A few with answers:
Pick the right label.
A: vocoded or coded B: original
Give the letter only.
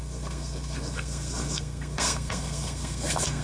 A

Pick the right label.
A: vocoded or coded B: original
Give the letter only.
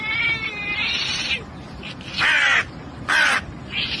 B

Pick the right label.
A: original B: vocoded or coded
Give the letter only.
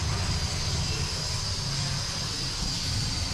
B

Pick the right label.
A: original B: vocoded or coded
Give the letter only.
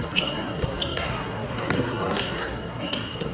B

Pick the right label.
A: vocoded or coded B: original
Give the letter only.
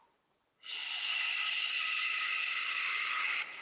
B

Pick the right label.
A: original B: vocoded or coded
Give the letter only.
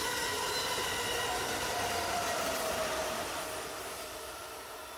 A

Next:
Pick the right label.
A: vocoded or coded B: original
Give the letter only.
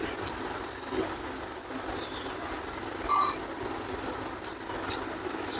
B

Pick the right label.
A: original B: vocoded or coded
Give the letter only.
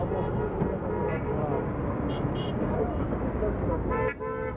A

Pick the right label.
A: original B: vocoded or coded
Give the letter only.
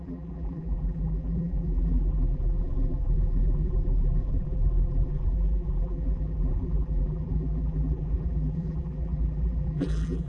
B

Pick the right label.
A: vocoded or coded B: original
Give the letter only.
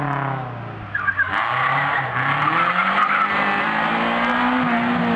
B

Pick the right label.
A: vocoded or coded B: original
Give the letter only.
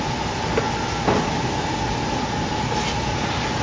B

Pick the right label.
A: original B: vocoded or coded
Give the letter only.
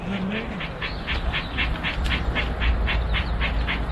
A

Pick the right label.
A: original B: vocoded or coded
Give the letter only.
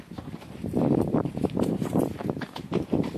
B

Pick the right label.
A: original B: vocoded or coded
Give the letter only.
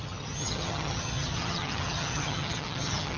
B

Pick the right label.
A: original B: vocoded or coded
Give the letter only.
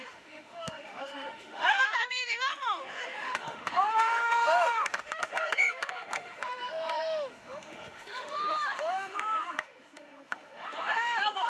B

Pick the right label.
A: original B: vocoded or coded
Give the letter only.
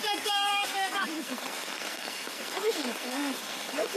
B